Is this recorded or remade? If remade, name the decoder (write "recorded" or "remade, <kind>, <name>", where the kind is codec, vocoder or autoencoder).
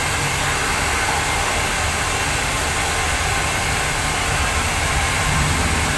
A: recorded